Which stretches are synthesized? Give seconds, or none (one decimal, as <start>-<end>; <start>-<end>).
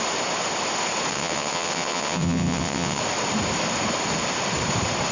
1.1-3.0